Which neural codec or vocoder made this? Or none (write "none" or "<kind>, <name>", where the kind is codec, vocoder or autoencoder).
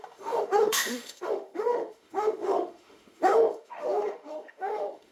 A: autoencoder, DAC-VAE